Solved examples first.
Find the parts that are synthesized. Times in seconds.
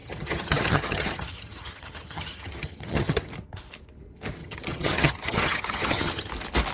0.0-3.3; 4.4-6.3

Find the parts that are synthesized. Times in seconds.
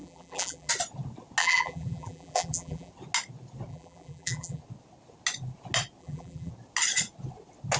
0.0-0.7; 1.4-2.9; 3.7-4.6; 6.0-6.5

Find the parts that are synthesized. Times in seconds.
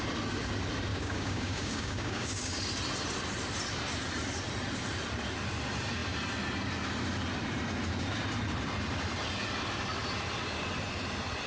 0.9-2.6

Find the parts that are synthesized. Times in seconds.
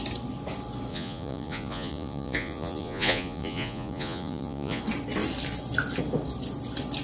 0.9-4.8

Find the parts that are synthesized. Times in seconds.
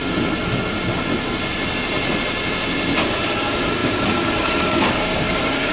3.4-5.7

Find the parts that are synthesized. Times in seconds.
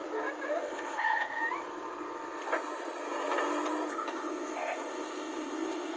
0.6-1.4; 3.9-6.0